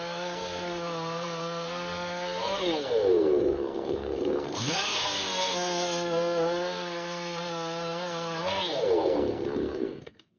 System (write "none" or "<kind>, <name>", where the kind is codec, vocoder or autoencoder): codec, SNAC